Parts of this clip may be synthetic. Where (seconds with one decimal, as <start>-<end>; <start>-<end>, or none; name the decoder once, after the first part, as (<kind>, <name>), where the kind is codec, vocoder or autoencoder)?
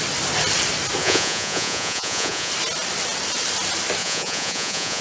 1.0-2.5 (vocoder, Vocos); 4.0-5.0